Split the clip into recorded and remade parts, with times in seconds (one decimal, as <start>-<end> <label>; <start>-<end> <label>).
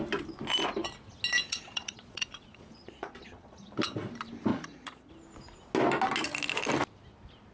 0.0-1.4 recorded; 1.4-3.7 remade; 3.7-4.5 recorded; 4.5-5.1 remade; 5.1-7.5 recorded